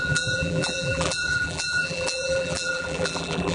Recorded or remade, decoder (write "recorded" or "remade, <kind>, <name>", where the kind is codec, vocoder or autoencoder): remade, vocoder, BigVGAN v2